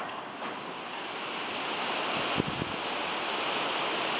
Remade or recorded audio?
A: recorded